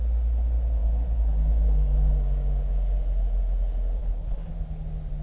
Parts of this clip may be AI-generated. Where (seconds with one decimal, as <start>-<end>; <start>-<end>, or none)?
4.0-4.5